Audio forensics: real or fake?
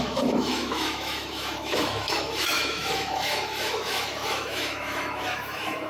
fake